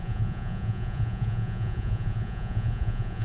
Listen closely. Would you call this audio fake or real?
fake